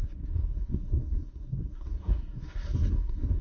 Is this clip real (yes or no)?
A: no